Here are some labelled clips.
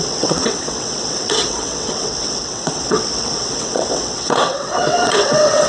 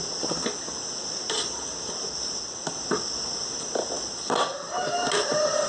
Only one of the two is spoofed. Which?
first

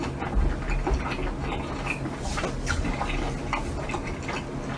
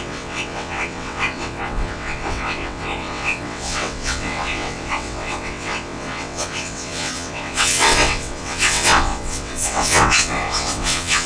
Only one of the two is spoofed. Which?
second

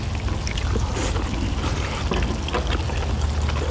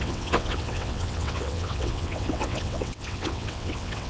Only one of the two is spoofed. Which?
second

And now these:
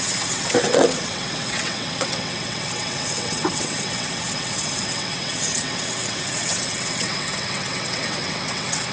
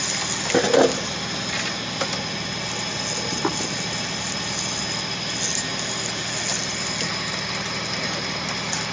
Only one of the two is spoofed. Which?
first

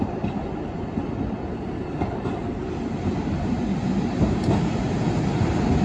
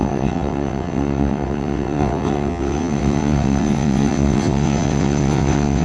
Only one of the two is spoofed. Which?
second